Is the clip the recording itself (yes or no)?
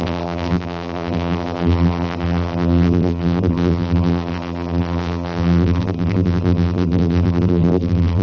no